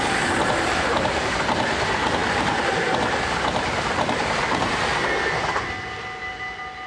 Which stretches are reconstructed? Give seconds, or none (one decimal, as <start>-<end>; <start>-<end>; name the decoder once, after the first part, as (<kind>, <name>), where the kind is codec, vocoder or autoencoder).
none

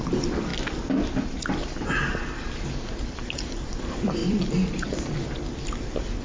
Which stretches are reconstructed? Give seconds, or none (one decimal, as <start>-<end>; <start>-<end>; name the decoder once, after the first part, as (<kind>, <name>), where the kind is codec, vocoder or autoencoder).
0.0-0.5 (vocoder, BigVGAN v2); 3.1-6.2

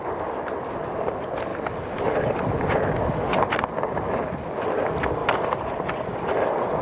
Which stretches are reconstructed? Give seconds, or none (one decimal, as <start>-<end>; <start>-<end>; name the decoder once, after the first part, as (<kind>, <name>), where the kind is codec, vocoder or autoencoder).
1.5-2.7 (vocoder, BigVGAN v2); 5.2-6.8

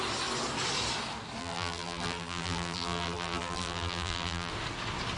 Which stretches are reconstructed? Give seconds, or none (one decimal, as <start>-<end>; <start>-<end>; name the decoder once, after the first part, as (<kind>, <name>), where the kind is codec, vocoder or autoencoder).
1.4-4.5 (vocoder, BigVGAN v2)

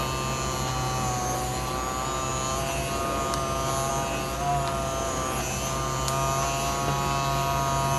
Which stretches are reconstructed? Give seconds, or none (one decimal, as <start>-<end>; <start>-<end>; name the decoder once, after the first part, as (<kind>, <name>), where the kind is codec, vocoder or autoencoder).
none

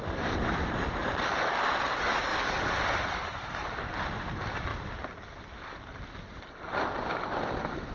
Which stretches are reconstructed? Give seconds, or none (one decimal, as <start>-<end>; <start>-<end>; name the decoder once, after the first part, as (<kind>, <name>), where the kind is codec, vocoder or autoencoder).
0.0-2.3 (vocoder, BigVGAN v2); 2.8-4.7